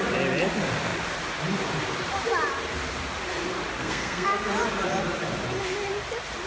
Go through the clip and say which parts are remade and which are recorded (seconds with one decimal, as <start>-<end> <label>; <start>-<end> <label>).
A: 0.0-3.8 recorded; 3.8-4.5 remade; 4.5-6.5 recorded